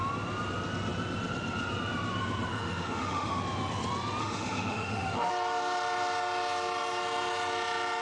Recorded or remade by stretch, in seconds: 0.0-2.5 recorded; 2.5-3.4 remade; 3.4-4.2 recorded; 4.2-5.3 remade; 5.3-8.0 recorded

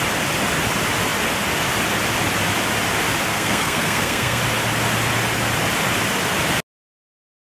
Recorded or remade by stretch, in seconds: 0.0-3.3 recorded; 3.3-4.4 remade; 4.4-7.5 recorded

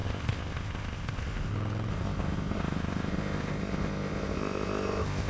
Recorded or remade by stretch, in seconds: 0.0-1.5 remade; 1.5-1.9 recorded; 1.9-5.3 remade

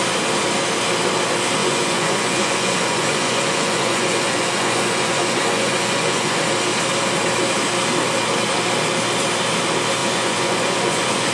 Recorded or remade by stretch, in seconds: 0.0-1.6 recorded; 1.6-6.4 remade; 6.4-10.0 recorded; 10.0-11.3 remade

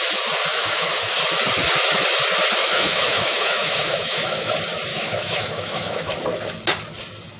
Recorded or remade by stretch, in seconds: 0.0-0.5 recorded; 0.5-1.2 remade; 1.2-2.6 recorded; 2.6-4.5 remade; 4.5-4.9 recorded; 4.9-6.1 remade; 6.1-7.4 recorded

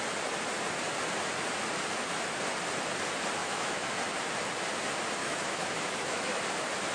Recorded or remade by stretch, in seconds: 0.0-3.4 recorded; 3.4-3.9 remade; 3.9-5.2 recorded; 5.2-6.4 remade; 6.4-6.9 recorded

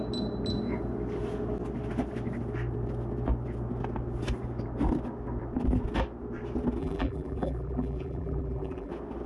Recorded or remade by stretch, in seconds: 0.0-6.8 recorded; 6.8-8.9 remade; 8.9-9.3 recorded